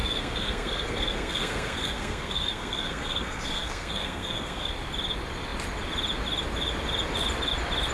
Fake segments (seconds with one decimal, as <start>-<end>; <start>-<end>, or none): 0.0-4.7